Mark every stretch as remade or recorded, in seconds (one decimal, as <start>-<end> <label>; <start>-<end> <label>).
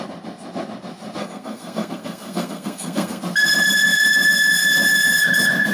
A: 0.0-1.2 recorded; 1.2-3.2 remade; 3.2-5.7 recorded